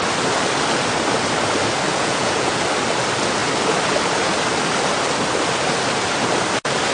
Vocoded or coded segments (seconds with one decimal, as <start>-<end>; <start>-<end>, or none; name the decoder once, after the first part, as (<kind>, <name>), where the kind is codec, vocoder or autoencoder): 1.9-2.6 (vocoder, Vocos)